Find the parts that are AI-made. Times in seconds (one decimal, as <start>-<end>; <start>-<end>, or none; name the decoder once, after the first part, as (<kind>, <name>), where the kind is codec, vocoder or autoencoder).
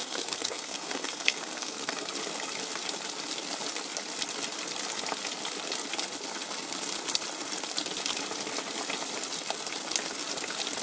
0.0-2.1 (codec, SNAC)